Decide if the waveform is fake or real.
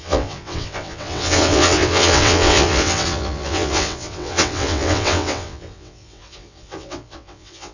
fake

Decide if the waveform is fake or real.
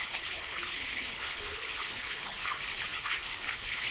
fake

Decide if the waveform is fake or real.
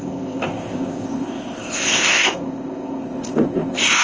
fake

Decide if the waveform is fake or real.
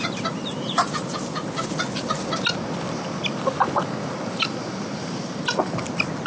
real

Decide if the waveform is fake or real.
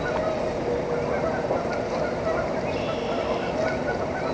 real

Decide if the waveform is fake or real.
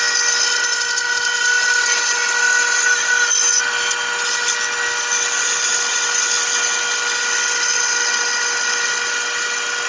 real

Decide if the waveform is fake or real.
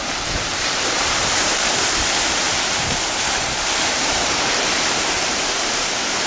fake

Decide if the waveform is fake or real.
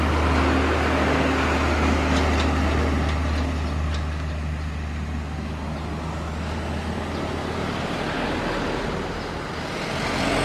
real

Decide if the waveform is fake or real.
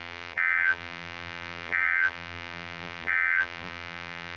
fake